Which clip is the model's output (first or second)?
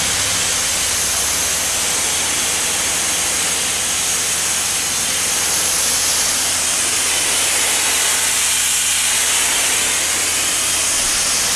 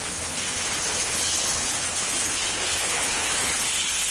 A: second